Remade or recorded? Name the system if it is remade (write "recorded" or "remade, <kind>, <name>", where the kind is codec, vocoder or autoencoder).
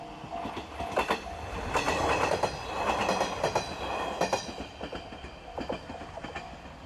recorded